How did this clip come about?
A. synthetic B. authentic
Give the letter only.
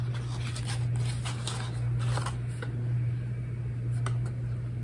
B